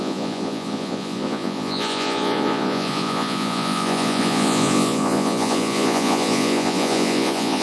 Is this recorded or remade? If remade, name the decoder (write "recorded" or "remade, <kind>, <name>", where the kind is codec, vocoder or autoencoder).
remade, vocoder, Vocos